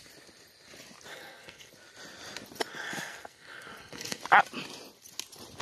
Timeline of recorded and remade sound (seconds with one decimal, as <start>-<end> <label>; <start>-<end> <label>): 0.0-1.1 recorded; 1.1-1.7 remade; 1.7-2.7 recorded; 2.7-4.2 remade; 4.2-5.6 recorded